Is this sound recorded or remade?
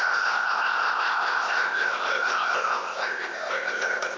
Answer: remade